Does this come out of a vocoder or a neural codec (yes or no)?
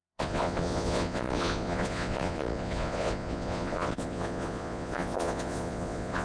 yes